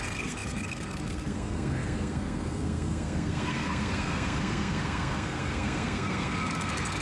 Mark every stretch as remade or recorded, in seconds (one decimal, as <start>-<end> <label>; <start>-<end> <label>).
0.0-7.0 remade